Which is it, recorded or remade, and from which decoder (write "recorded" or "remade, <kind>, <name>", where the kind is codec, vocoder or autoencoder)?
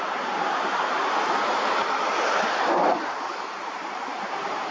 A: remade, vocoder, BigVGAN v2